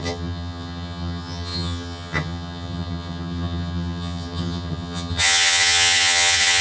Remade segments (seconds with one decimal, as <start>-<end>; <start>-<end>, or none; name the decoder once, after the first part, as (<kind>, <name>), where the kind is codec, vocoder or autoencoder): 0.0-6.6 (vocoder, HiFi-GAN)